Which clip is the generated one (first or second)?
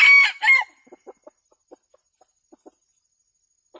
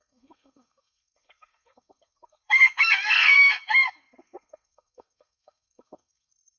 second